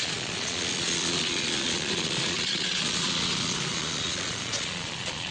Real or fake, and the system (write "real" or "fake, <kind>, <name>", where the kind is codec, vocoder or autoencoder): fake, vocoder, Vocos